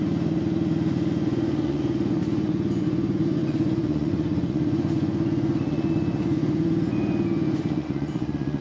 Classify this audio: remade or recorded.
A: remade